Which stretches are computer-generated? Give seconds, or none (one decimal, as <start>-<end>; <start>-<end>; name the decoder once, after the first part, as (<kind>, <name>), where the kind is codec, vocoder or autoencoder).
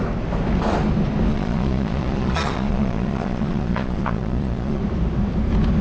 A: 1.3-4.8 (vocoder, Vocos)